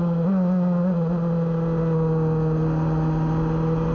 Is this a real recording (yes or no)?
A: yes